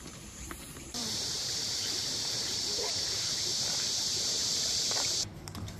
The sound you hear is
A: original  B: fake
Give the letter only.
B